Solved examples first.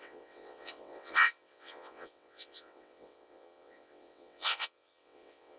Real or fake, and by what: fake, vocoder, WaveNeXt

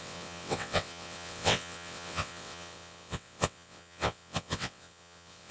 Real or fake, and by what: fake, vocoder, WaveNeXt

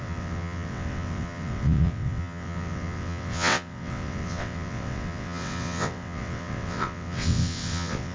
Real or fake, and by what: fake, vocoder, WaveNeXt